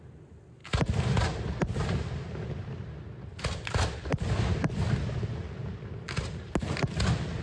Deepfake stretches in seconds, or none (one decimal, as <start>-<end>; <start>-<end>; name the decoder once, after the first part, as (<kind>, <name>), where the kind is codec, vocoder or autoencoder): none